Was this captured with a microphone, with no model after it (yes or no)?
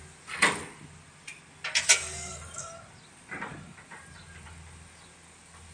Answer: yes